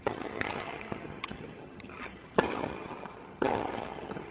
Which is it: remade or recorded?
remade